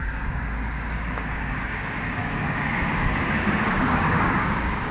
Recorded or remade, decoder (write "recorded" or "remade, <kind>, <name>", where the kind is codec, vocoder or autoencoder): remade, codec, DAC